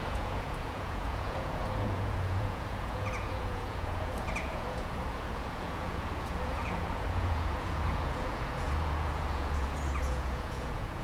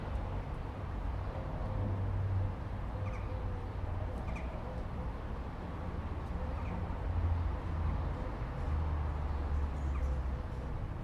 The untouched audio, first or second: second